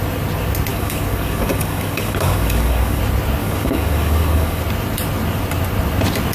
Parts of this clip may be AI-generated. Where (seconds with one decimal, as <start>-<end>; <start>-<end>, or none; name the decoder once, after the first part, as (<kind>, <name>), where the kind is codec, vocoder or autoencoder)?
0.7-3.0 (codec, DAC); 3.4-4.6